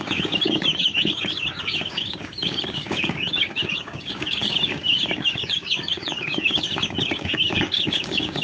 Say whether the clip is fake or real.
fake